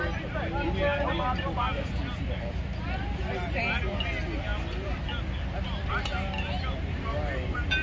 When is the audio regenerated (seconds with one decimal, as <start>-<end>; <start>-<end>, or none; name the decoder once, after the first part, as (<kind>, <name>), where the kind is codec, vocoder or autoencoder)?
none